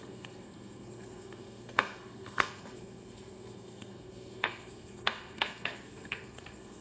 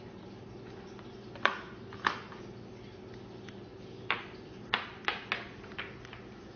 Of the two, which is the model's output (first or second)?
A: first